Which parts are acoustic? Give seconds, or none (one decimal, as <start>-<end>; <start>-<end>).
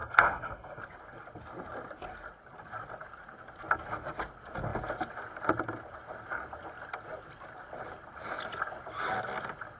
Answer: 0.8-9.8